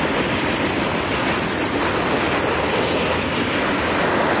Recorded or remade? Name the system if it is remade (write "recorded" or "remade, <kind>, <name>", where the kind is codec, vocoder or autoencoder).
recorded